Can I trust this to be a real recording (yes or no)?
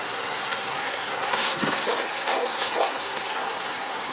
no